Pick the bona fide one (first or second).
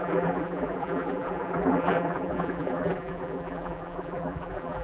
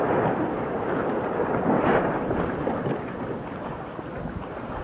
second